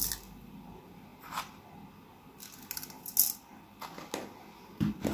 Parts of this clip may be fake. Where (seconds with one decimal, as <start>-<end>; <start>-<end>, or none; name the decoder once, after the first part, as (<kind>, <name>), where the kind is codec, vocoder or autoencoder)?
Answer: none